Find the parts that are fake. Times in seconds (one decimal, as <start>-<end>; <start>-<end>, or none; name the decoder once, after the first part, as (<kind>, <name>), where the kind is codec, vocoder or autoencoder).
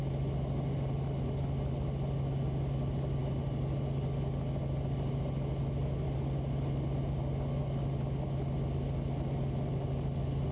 none